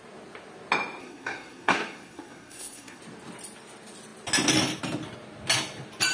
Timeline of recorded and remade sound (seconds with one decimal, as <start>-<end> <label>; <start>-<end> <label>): 0.0-1.0 recorded; 1.0-3.0 remade; 3.0-6.1 recorded